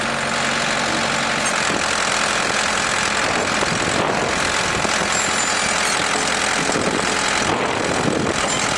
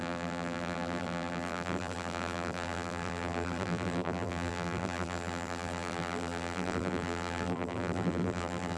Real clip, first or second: first